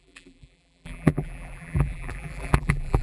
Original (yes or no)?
no